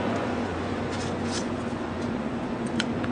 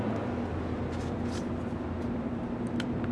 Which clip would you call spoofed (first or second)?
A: first